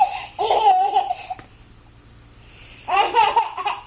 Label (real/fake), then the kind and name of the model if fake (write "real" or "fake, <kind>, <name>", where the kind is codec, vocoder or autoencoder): fake, vocoder, BigVGAN v2